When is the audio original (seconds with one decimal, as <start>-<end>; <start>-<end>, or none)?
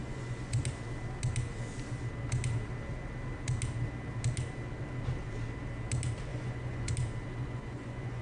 0.6-6.3; 6.9-7.4